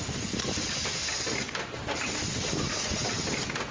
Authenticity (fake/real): real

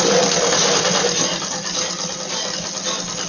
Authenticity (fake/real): real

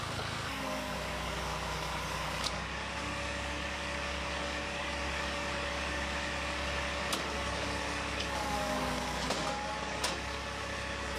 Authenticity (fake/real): fake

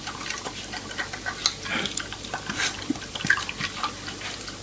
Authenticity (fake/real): real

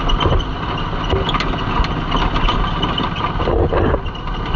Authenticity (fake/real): real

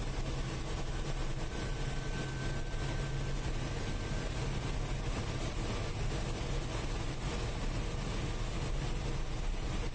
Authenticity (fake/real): real